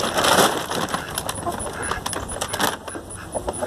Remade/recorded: recorded